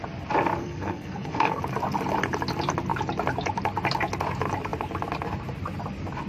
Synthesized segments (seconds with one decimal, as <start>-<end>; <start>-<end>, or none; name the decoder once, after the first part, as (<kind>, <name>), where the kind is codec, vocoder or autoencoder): 0.6-1.6 (codec, SNAC)